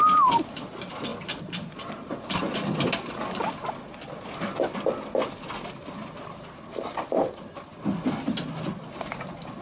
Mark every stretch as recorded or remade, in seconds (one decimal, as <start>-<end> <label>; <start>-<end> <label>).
0.0-9.6 recorded